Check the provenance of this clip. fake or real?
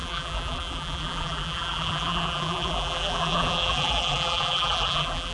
fake